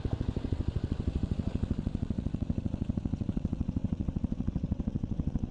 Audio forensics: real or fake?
fake